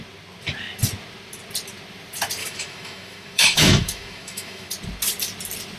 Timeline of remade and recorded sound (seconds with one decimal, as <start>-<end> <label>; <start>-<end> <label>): 0.0-2.4 recorded; 2.4-4.7 remade; 4.7-5.8 recorded